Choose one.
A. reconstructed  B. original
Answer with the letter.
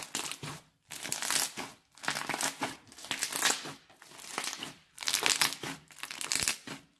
B